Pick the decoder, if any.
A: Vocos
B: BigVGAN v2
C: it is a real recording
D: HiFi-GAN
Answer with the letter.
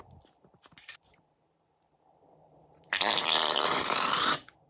B